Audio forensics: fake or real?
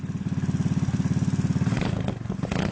real